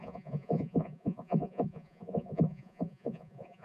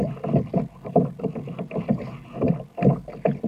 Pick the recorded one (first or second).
second